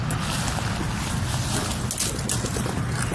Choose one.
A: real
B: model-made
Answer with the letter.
A